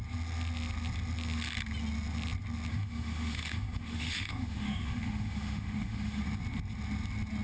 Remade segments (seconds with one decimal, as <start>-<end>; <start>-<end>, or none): 2.7-6.2